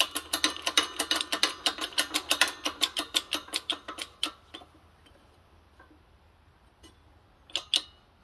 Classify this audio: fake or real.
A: real